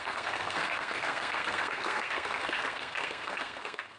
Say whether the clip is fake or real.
fake